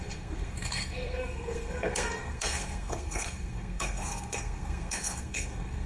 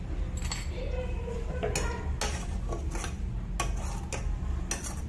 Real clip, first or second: second